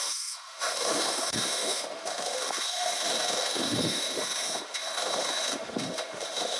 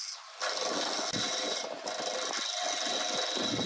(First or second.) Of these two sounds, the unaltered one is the second